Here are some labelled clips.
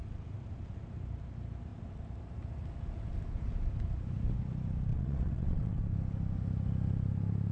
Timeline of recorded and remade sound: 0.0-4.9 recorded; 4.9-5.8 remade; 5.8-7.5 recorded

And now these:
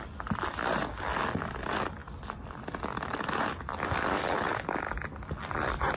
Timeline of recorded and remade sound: 0.0-6.0 recorded

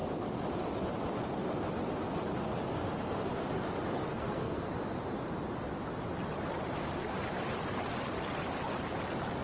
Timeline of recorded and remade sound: 0.0-4.0 recorded; 4.0-4.7 remade; 4.7-9.4 recorded

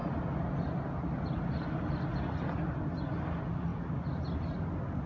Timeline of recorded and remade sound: 0.0-5.1 recorded

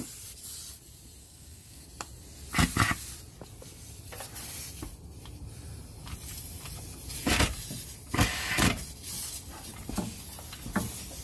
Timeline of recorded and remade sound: 0.0-1.2 recorded; 1.2-1.8 remade; 1.8-11.2 recorded